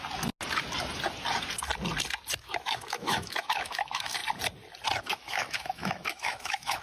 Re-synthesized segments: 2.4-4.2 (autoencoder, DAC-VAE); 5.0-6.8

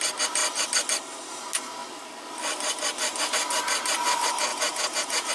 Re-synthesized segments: 4.5-5.3 (vocoder, Vocos)

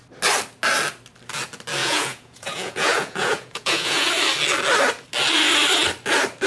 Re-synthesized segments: 1.8-4.1 (vocoder, Vocos)

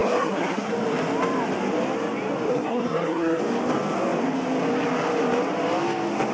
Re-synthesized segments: 0.0-0.7 (codec, SNAC); 2.5-3.4

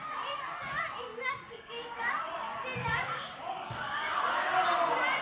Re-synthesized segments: 1.1-2.1 (codec, DAC); 2.8-4.1

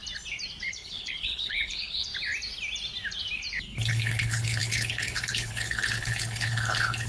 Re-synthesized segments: 0.7-2.1 (codec, HILCodec); 3.9-7.1